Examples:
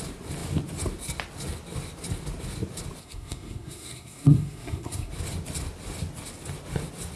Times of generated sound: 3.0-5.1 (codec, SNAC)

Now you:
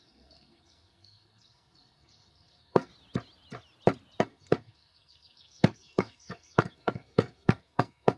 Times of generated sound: 0.0-2.9 (codec, SNAC); 4.2-8.2